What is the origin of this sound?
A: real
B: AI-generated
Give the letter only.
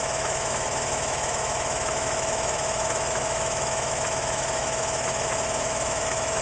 B